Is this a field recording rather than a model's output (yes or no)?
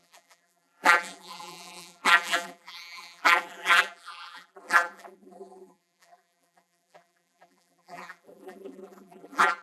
no